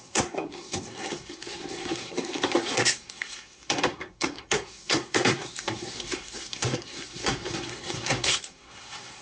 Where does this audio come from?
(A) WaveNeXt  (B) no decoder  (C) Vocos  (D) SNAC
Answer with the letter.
D